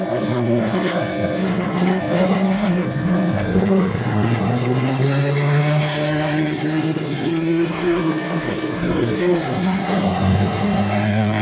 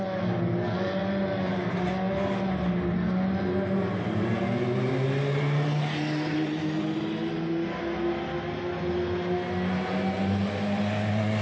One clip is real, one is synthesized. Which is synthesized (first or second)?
first